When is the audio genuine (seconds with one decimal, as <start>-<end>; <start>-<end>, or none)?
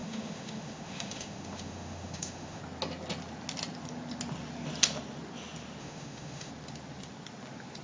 2.6-5.8; 6.5-7.8